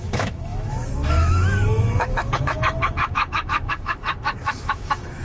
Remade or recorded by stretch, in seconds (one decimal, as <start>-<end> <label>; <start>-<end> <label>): 0.0-5.2 remade

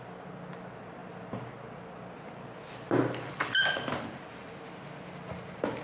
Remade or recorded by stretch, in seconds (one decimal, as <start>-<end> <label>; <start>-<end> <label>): 0.0-5.8 recorded

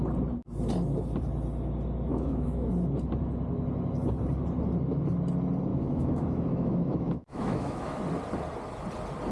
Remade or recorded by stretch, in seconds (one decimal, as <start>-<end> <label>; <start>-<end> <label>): 0.0-2.1 recorded; 2.1-2.7 remade; 2.7-5.7 recorded; 5.7-8.0 remade; 8.0-9.3 recorded

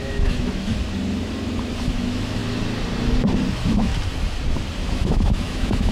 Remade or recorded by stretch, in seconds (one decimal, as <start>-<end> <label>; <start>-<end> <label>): 0.0-0.7 remade; 0.7-1.9 recorded; 1.9-2.4 remade; 2.4-3.5 recorded; 3.5-3.9 remade; 3.9-4.9 recorded; 4.9-5.9 remade